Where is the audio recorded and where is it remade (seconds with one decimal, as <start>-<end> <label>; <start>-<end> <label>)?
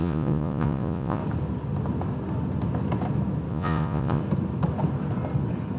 0.0-1.2 remade; 1.2-3.5 recorded; 3.5-4.2 remade; 4.2-5.8 recorded